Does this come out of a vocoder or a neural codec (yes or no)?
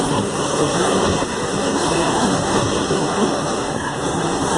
yes